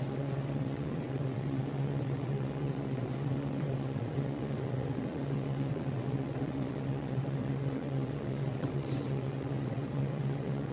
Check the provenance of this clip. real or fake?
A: fake